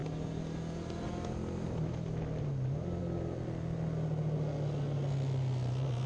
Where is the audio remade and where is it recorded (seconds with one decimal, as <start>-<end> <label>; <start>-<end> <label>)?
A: 0.0-6.1 recorded